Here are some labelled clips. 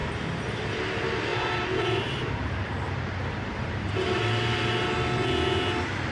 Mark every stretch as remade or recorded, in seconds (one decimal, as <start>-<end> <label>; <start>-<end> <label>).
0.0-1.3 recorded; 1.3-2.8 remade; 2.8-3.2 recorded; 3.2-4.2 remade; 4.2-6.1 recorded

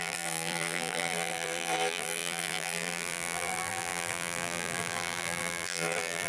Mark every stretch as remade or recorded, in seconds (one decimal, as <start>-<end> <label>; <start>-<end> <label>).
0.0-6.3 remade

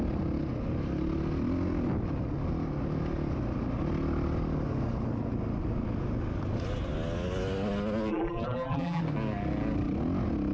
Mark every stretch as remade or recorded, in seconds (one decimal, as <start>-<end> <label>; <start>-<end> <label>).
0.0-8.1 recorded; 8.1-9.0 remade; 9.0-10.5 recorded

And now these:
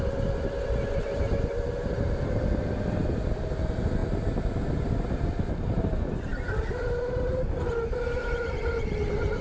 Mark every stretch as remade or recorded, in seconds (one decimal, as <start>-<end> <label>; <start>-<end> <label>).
0.0-9.4 recorded

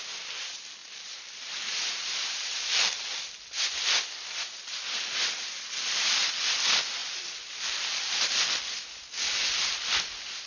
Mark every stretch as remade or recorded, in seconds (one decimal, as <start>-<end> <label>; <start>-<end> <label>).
0.0-0.8 recorded; 0.8-3.3 remade; 3.3-7.0 recorded; 7.0-8.3 remade; 8.3-10.5 recorded

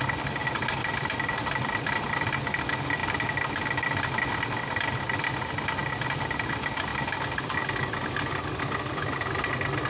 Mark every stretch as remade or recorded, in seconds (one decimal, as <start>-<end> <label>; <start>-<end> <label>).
0.0-0.4 recorded; 0.4-1.7 remade; 1.7-3.0 recorded; 3.0-4.3 remade; 4.3-5.8 recorded; 5.8-6.5 remade; 6.5-6.9 recorded; 6.9-7.6 remade; 7.6-9.9 recorded

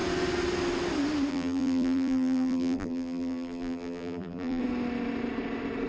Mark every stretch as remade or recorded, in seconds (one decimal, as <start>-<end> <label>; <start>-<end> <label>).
0.0-1.3 recorded; 1.3-4.6 remade; 4.6-5.9 recorded